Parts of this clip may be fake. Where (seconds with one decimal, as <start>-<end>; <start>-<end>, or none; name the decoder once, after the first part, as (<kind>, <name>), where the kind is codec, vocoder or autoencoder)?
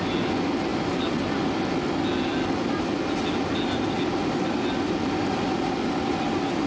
none